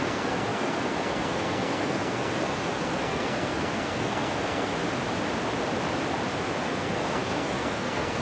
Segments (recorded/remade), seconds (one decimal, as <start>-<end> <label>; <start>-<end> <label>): 0.0-4.7 remade; 4.7-6.6 recorded; 6.6-8.2 remade